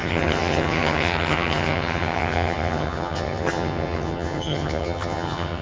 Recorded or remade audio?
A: remade